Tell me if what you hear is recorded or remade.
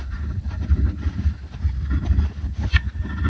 recorded